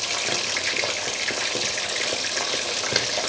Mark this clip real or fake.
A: real